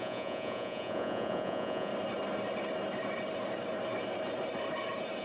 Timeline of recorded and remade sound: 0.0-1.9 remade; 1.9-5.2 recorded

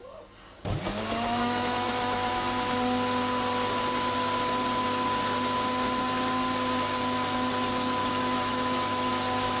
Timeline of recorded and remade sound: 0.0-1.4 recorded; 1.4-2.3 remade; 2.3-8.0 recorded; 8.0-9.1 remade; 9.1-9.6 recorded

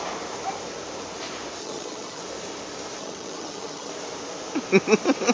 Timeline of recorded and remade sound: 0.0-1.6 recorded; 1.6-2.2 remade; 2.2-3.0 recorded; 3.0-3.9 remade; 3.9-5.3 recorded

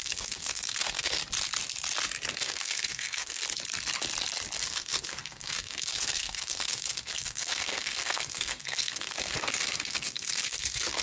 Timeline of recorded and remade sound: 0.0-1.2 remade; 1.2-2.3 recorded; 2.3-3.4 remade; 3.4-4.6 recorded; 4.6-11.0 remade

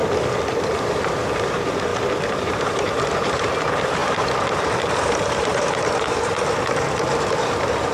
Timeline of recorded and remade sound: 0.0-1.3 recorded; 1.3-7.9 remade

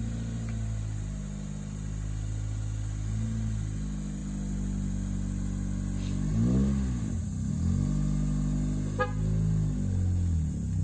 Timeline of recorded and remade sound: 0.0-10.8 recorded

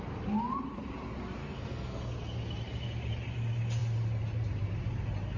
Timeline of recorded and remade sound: 0.0-1.4 recorded; 1.4-2.0 remade; 2.0-5.4 recorded

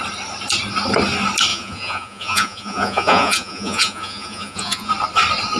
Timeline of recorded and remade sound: 0.0-1.5 recorded; 1.5-4.9 remade; 4.9-5.6 recorded